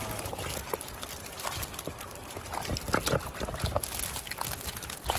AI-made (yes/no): no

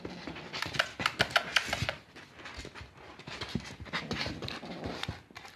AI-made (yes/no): no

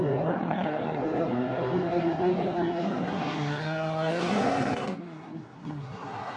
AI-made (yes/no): yes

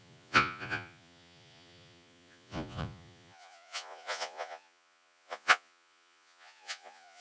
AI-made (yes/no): yes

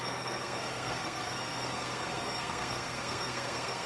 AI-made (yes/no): yes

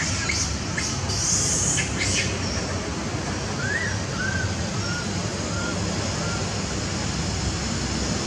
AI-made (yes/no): no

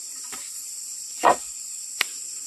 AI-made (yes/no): yes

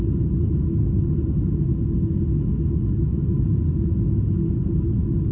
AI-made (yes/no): no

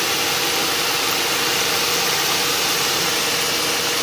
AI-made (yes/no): no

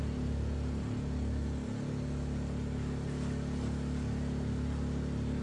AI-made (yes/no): no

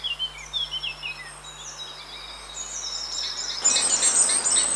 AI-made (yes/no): no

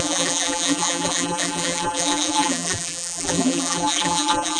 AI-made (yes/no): yes